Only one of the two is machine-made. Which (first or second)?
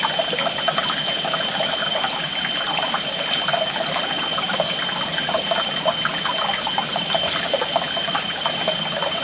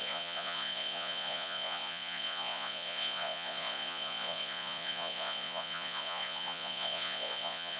second